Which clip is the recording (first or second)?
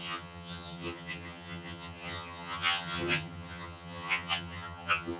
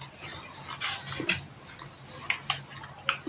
second